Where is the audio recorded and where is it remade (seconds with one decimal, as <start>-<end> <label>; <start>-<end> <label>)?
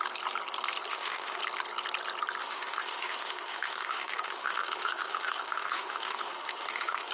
0.0-0.9 recorded; 0.9-1.4 remade; 1.4-2.4 recorded; 2.4-7.1 remade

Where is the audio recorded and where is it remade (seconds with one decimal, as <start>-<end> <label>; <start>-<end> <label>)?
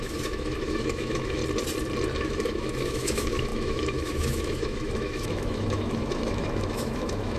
0.0-1.4 remade; 1.4-2.2 recorded; 2.2-7.4 remade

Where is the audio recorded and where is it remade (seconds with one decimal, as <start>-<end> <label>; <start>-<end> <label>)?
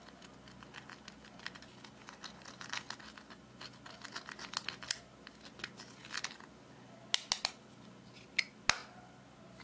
0.0-9.6 recorded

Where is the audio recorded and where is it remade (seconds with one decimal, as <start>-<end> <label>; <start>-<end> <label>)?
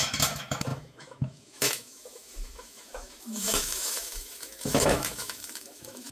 0.0-6.1 remade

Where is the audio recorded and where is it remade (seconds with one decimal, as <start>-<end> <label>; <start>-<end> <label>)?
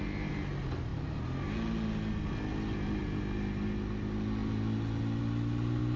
0.0-6.0 recorded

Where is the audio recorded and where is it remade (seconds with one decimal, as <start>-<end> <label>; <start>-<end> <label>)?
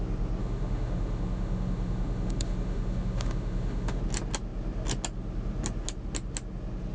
0.0-0.4 recorded; 0.4-4.0 remade; 4.0-6.9 recorded